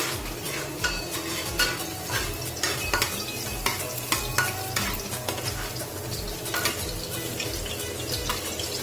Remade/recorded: recorded